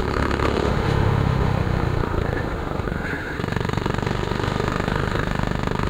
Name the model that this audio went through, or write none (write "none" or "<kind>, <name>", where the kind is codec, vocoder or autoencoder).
autoencoder, DAC-VAE